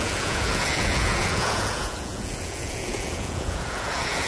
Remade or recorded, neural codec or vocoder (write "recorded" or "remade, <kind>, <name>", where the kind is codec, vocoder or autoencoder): remade, vocoder, Vocos